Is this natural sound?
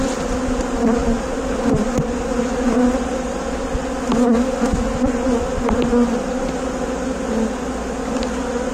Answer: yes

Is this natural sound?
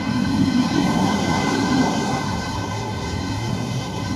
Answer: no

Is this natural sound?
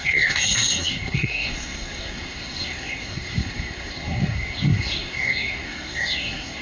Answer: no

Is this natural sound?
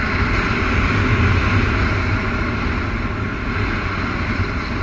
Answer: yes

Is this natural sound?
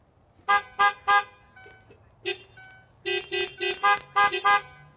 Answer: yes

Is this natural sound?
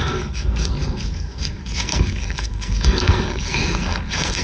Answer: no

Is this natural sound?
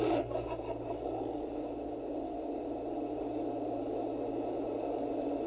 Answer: yes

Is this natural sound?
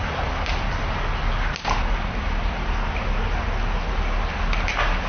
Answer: yes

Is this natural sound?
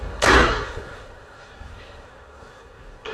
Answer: no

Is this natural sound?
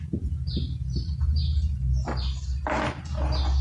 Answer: yes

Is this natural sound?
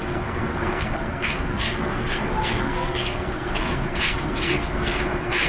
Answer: no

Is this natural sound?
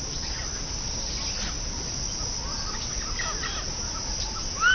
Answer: yes